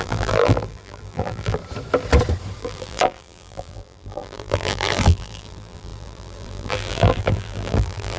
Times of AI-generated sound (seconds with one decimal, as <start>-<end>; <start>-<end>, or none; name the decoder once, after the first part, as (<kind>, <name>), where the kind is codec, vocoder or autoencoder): 0.0-1.6 (vocoder, BigVGAN v2); 2.6-8.2